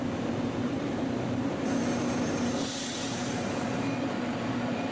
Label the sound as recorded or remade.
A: remade